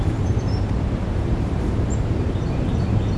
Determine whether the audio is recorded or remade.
remade